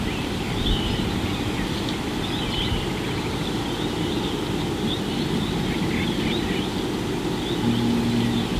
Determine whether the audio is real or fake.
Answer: real